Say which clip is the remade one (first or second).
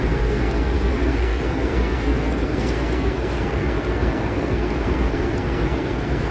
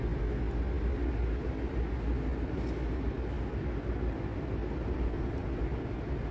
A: first